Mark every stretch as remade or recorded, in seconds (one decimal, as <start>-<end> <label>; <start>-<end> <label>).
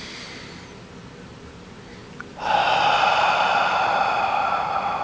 0.0-5.0 recorded